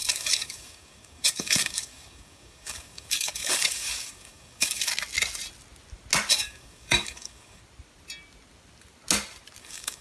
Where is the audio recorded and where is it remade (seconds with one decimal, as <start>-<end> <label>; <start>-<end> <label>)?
0.0-4.9 remade; 4.9-6.3 recorded; 6.3-7.6 remade; 7.6-9.6 recorded; 9.6-10.0 remade